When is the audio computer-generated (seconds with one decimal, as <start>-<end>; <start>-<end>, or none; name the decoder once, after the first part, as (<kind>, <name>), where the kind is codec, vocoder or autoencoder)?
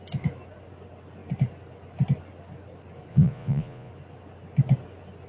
3.1-3.9 (vocoder, Vocos)